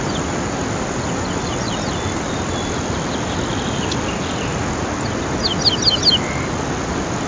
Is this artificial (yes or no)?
no